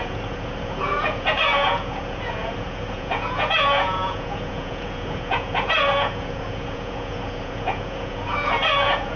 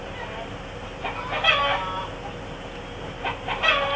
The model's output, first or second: first